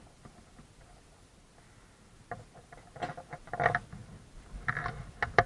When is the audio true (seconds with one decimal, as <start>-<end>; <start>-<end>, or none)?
0.0-5.5